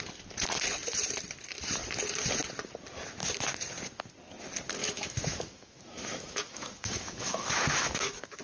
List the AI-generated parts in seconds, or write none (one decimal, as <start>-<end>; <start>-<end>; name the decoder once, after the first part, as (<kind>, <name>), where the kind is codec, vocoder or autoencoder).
4.8-8.4 (autoencoder, DAC-VAE)